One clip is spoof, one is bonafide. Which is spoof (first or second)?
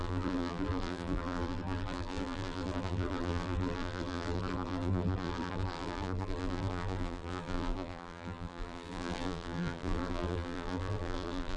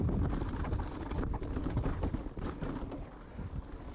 first